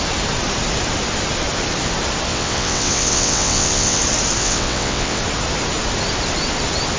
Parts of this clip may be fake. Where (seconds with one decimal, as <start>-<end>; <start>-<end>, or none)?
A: 2.3-4.0; 4.4-5.2